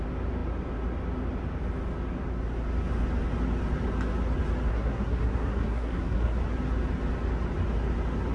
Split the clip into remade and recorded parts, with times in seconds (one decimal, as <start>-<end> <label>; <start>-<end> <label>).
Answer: 0.0-4.7 recorded; 4.7-6.4 remade; 6.4-8.3 recorded